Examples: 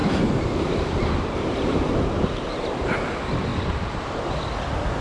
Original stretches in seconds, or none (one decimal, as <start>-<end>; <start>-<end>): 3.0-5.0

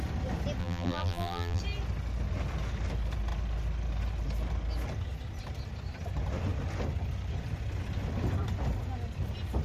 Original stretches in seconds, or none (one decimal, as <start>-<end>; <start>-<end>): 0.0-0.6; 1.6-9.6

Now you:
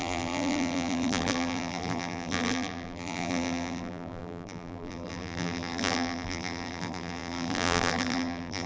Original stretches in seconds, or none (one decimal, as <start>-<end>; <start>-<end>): none

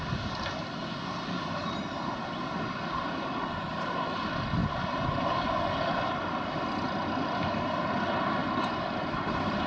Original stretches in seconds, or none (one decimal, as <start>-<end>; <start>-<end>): 0.0-4.6; 5.5-8.4

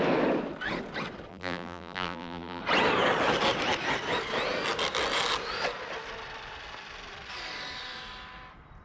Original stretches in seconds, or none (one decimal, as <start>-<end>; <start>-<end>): 0.0-1.3; 2.6-8.8

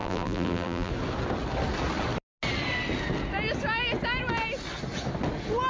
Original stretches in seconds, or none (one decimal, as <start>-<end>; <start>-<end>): 0.9-5.7

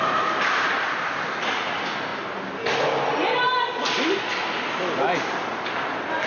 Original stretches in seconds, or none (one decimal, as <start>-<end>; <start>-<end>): 0.0-6.3